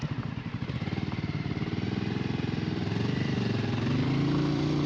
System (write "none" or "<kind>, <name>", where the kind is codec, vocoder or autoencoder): vocoder, BigVGAN v2